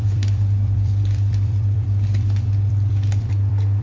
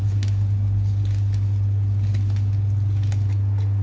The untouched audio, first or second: second